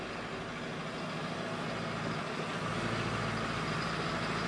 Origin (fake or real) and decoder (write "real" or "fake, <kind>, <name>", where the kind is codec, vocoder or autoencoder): real